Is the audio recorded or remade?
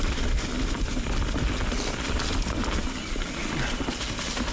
recorded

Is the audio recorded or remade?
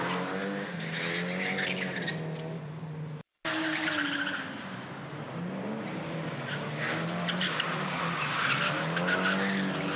recorded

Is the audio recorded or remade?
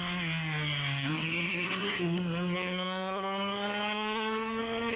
remade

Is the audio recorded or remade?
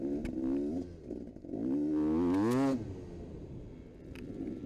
recorded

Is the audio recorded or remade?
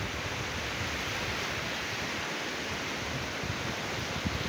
recorded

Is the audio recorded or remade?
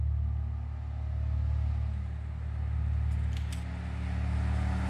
recorded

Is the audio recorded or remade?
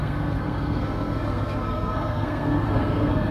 remade